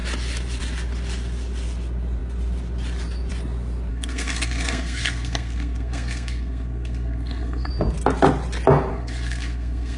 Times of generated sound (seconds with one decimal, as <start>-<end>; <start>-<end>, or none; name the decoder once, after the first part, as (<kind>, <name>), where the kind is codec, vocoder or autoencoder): 3.9-7.7 (codec, SNAC); 8.9-10.0